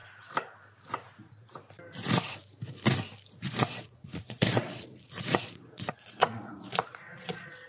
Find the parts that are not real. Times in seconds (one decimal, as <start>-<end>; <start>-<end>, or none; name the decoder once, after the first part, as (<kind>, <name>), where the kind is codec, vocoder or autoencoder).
3.3-7.7 (vocoder, Vocos)

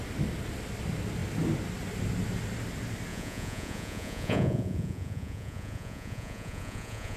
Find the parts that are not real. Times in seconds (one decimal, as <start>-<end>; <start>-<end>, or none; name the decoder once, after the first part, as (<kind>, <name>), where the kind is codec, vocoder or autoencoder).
3.1-7.2 (vocoder, Vocos)

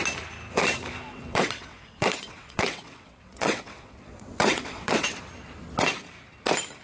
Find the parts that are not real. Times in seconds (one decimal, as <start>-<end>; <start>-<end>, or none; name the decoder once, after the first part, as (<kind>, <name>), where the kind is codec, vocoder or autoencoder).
1.1-5.2 (vocoder, WaveNeXt)